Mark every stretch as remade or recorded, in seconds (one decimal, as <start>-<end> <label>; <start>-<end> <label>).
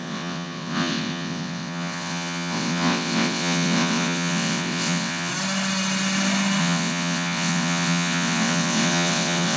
0.0-5.3 remade; 5.3-6.6 recorded; 6.6-9.6 remade